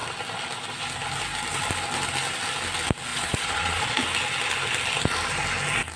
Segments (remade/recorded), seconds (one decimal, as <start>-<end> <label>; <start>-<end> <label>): 0.0-3.1 recorded; 3.1-4.0 remade; 4.0-6.0 recorded